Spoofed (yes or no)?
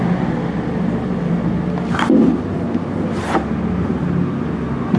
no